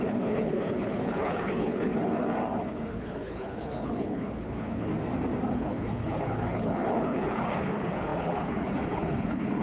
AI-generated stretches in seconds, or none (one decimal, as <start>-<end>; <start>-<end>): 0.0-1.9; 2.6-4.9; 5.5-9.6